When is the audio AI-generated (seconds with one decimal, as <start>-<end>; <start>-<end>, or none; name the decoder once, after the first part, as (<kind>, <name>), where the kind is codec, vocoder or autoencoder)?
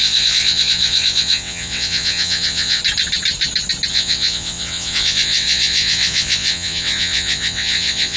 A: 0.0-2.8 (vocoder, WaveNeXt); 3.9-8.2